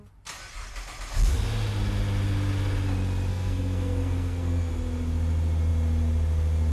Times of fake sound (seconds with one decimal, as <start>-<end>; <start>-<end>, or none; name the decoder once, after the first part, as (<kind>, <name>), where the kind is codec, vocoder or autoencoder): 3.3-4.7 (codec, SNAC)